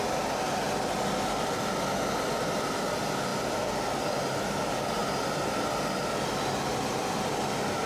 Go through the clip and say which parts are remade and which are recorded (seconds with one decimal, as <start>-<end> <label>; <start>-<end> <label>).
0.0-7.9 recorded